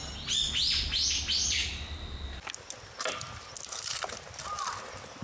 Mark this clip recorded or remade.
recorded